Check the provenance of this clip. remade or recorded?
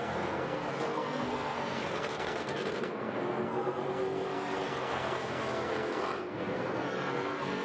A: remade